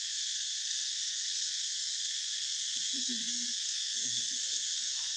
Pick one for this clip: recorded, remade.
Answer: remade